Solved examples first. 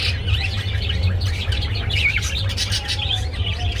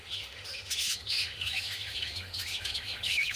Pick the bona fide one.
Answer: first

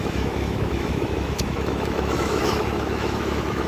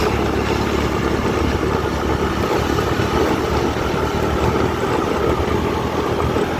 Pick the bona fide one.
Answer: second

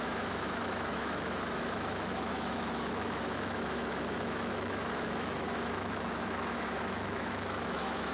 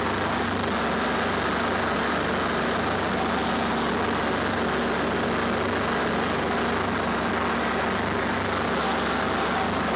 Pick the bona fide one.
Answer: second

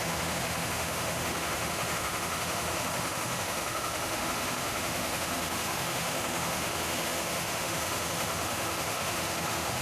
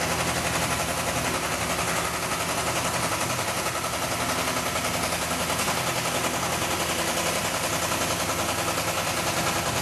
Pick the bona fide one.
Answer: second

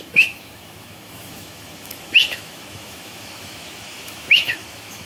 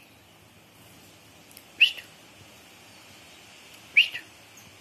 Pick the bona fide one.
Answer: second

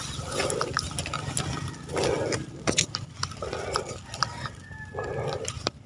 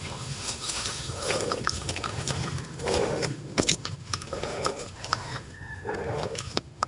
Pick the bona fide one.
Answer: first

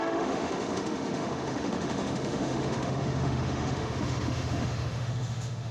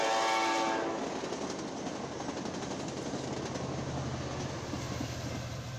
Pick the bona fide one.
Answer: second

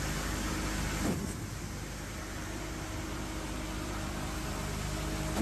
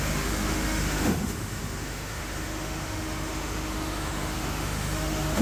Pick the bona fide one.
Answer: first